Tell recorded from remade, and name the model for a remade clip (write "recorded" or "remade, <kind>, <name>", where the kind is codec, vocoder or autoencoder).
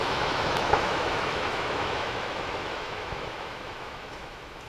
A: remade, autoencoder, DAC-VAE